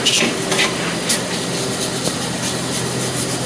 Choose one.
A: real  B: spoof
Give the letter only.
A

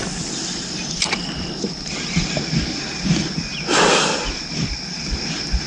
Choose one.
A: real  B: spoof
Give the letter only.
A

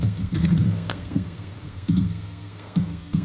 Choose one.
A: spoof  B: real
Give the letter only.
A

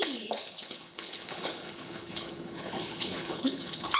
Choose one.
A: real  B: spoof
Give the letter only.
B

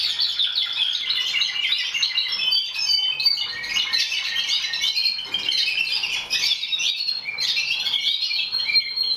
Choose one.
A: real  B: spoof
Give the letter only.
A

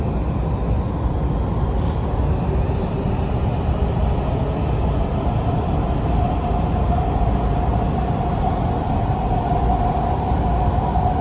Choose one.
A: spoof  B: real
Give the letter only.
B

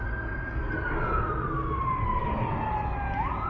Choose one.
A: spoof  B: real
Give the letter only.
B